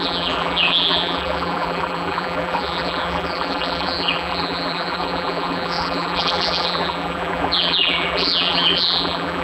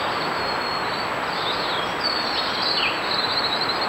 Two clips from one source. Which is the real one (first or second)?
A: second